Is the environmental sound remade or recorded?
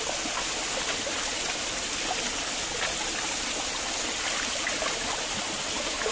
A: recorded